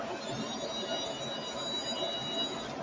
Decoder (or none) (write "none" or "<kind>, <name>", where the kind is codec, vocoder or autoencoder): none